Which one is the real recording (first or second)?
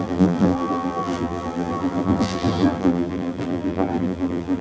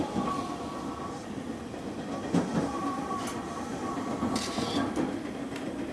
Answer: second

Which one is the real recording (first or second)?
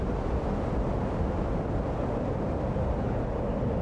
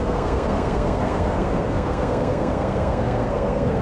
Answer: first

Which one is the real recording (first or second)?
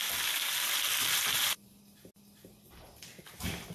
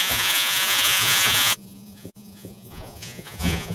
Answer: first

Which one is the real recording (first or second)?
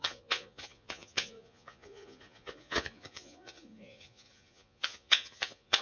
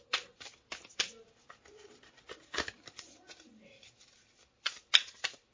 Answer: second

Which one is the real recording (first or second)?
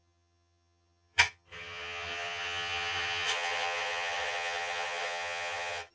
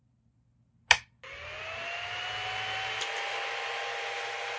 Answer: second